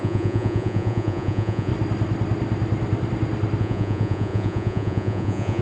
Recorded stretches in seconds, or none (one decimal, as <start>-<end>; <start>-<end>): 1.7-3.6